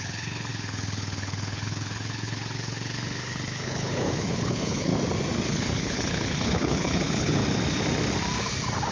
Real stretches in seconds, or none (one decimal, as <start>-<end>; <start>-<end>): 4.9-5.5; 7.4-8.9